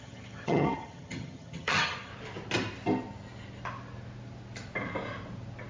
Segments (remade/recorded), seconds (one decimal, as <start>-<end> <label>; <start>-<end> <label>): 0.0-2.1 remade; 2.1-5.7 recorded